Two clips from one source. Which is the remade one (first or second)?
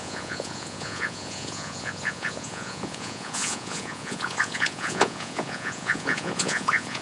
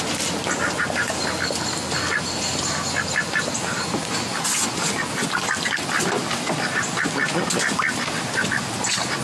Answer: first